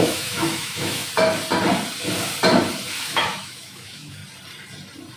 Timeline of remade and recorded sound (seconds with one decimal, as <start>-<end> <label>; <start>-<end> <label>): 0.0-1.0 remade; 1.0-2.9 recorded; 2.9-4.2 remade; 4.2-5.2 recorded

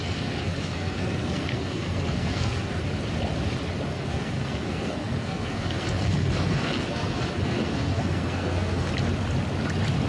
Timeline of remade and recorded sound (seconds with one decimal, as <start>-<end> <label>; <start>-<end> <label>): 0.0-2.8 remade; 2.8-3.9 recorded; 3.9-8.9 remade; 8.9-10.1 recorded

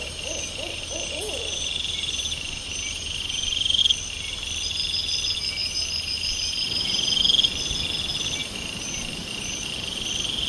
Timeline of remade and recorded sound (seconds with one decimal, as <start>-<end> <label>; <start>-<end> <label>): 0.0-3.8 remade; 3.8-5.6 recorded; 5.6-7.2 remade; 7.2-8.4 recorded; 8.4-9.7 remade; 9.7-10.5 recorded

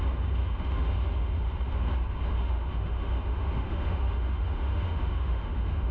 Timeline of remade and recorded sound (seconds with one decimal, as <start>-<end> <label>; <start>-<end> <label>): 0.0-0.4 recorded; 0.4-1.4 remade; 1.4-2.4 recorded; 2.4-5.9 remade

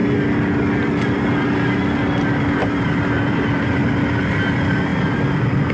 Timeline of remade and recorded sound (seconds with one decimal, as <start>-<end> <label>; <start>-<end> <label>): 0.0-2.4 recorded; 2.4-3.8 remade; 3.8-4.3 recorded; 4.3-5.7 remade

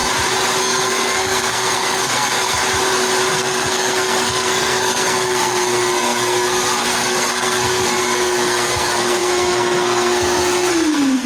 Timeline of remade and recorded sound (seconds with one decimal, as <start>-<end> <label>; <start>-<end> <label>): 0.0-0.6 recorded; 0.6-2.6 remade; 2.6-3.3 recorded; 3.3-11.3 remade

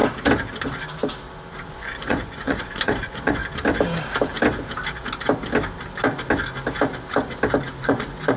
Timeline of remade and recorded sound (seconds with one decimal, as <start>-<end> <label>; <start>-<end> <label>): 0.0-1.7 recorded; 1.7-3.4 remade; 3.4-7.8 recorded; 7.8-8.4 remade

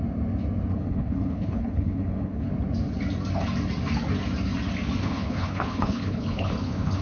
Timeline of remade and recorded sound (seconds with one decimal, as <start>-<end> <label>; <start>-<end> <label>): 0.0-0.7 recorded; 0.7-2.5 remade; 2.5-5.0 recorded; 5.0-7.0 remade